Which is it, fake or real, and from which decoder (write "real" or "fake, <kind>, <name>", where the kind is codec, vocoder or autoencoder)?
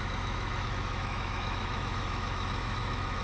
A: fake, autoencoder, DAC-VAE